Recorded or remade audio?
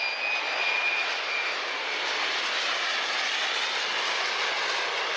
recorded